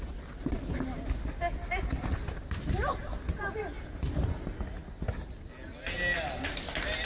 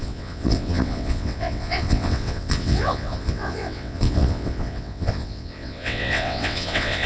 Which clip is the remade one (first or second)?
second